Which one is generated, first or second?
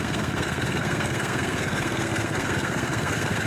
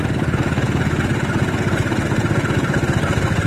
first